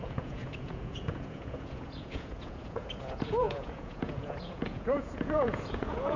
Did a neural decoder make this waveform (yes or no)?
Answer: yes